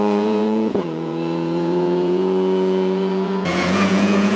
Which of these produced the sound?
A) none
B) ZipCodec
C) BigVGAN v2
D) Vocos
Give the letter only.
D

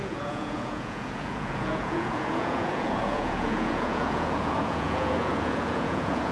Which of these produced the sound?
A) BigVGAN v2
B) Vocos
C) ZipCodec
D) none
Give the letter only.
B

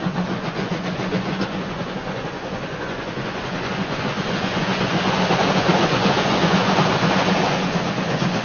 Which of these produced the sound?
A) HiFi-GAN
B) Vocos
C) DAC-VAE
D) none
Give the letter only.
B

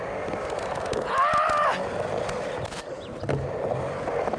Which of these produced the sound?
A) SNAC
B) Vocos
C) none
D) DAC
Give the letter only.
C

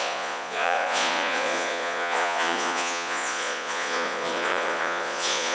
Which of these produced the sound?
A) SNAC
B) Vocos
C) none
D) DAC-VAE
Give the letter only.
B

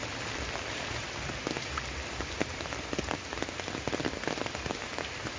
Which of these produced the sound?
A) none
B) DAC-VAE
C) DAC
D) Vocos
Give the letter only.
A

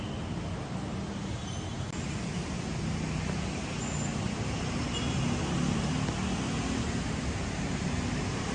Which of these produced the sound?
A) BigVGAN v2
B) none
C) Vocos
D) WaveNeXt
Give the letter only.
B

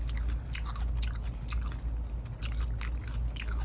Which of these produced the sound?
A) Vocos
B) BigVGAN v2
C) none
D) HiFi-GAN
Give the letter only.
C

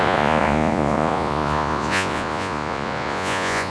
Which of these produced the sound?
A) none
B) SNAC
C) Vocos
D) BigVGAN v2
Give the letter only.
C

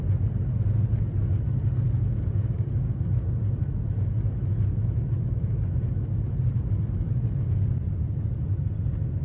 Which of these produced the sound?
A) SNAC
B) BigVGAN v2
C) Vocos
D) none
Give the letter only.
D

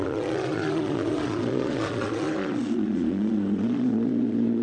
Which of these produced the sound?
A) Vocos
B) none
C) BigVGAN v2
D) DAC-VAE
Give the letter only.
A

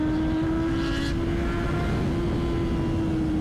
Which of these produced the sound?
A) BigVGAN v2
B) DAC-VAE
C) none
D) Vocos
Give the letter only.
C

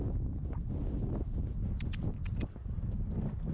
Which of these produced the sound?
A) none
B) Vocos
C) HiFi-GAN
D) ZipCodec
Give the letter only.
A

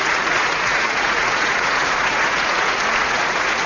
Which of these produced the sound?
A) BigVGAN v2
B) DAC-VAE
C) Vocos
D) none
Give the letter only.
C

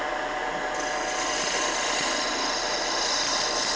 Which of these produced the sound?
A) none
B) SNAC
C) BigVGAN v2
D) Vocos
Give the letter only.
A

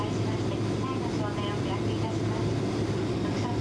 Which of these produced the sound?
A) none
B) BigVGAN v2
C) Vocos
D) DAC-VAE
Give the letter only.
A